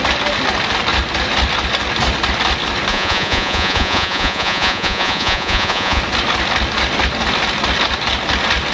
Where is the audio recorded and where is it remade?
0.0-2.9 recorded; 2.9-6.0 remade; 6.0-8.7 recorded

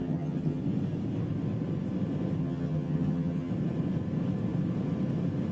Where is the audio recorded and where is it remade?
0.0-0.6 remade; 0.6-2.4 recorded; 2.4-3.5 remade; 3.5-5.5 recorded